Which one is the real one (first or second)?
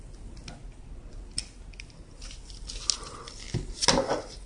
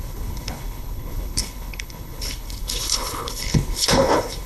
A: first